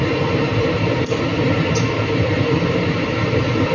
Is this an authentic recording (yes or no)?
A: no